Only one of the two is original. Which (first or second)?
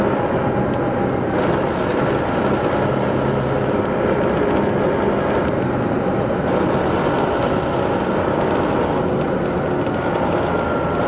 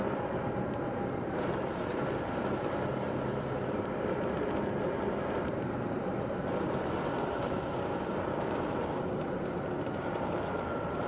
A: first